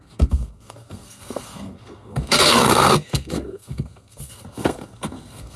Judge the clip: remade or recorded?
remade